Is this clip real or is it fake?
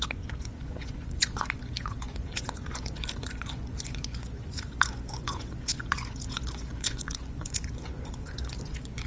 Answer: fake